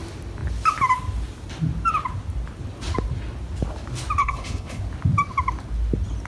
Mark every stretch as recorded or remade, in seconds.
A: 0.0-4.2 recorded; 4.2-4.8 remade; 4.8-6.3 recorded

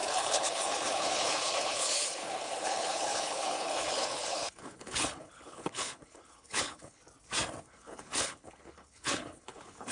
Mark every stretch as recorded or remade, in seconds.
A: 0.0-7.0 remade; 7.0-7.6 recorded; 7.6-9.9 remade